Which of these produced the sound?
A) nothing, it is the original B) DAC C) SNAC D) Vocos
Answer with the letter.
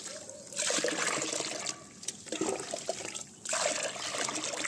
A